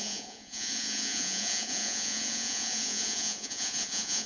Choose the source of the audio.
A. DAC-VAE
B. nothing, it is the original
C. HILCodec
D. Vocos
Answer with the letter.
D